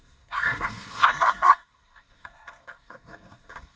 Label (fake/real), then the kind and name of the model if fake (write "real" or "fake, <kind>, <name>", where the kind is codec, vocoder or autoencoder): fake, codec, SNAC